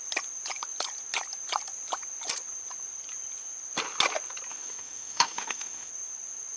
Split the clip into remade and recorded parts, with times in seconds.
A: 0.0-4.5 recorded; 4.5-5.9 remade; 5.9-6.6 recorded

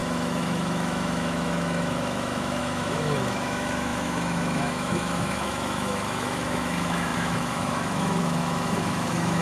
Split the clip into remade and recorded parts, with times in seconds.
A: 0.0-9.4 remade

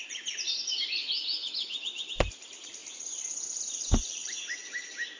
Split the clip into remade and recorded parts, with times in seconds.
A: 0.0-1.0 recorded; 1.0-2.1 remade; 2.1-5.2 recorded

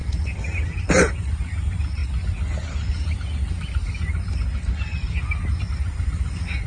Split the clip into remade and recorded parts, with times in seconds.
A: 0.0-6.7 recorded

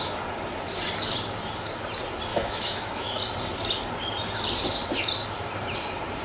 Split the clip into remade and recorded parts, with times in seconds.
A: 0.0-2.3 recorded; 2.3-3.2 remade; 3.2-6.2 recorded